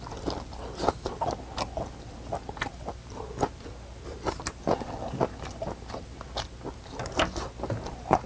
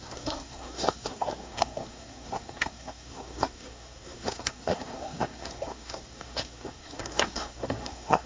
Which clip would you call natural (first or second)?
first